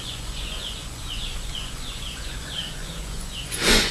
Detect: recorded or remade remade